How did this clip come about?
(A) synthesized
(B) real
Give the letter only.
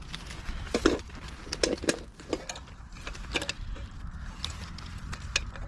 B